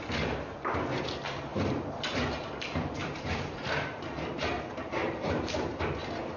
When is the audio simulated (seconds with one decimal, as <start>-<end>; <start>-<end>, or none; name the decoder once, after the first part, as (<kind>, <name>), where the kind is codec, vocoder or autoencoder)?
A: 1.5-2.3 (vocoder, BigVGAN v2); 3.0-4.5; 5.0-5.8